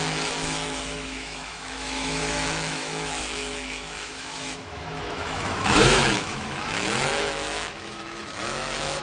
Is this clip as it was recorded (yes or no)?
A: no